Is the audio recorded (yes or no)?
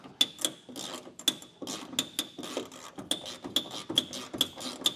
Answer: yes